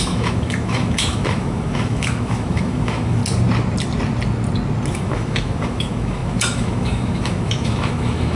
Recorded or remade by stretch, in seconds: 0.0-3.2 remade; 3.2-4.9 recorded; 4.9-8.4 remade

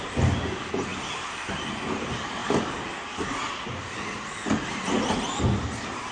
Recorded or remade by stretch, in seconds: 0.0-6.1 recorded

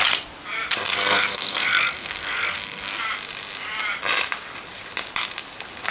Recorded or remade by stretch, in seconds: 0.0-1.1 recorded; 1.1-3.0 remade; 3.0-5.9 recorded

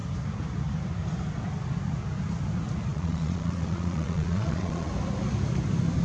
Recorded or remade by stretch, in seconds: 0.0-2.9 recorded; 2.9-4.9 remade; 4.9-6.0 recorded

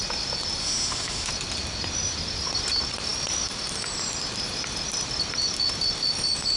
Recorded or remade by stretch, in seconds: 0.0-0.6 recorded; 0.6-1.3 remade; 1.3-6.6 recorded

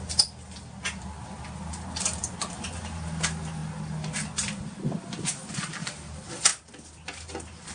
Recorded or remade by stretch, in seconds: 0.0-6.5 recorded; 6.5-7.7 remade

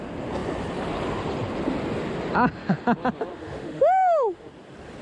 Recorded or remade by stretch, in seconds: 0.0-3.3 recorded; 3.3-4.5 remade; 4.5-5.0 recorded